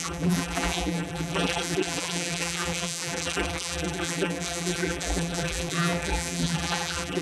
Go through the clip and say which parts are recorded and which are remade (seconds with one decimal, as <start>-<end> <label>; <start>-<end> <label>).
0.0-7.2 remade